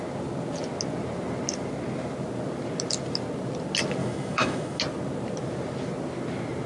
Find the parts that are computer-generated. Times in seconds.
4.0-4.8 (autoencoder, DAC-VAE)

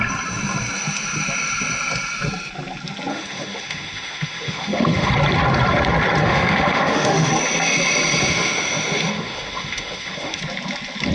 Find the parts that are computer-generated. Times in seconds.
3.1-5.1 (autoencoder, DAC-VAE); 6.2-7.3; 8.3-10.4